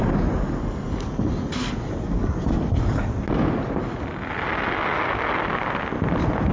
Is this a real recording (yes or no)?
yes